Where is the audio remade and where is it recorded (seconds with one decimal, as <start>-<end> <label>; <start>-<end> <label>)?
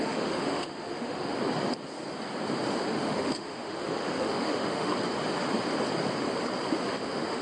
0.0-1.4 remade; 1.4-2.9 recorded; 2.9-4.9 remade; 4.9-6.9 recorded; 6.9-7.4 remade